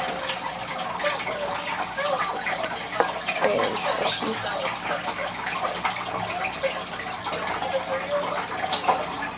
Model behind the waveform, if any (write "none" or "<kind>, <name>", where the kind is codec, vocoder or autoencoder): none